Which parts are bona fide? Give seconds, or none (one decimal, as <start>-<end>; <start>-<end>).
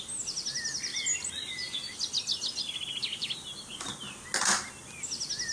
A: 0.0-5.5